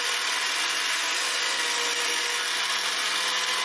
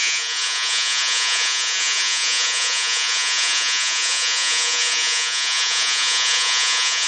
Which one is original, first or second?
first